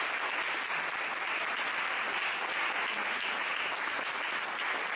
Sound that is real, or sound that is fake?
real